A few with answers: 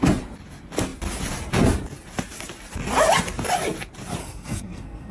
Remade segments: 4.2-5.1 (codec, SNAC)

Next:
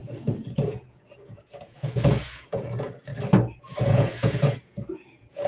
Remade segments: 0.0-3.1 (vocoder, Vocos); 3.8-5.5

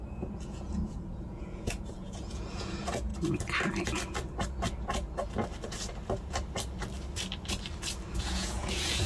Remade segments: 0.0-3.1 (vocoder, Vocos); 8.2-9.1

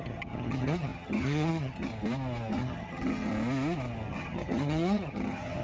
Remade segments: 0.0-1.9 (vocoder, HiFi-GAN); 2.5-3.3; 4.1-5.6